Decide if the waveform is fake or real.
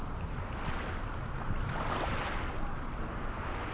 real